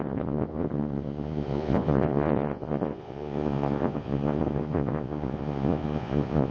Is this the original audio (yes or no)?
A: no